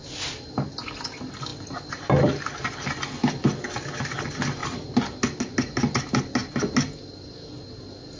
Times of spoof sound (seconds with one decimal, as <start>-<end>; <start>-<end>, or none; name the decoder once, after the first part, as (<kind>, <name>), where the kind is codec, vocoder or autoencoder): none